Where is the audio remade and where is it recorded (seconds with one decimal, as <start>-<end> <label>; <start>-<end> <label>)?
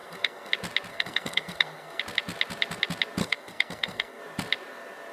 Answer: 0.0-0.5 remade; 0.5-0.9 recorded; 0.9-2.0 remade; 2.0-3.2 recorded; 3.2-4.2 remade; 4.2-5.1 recorded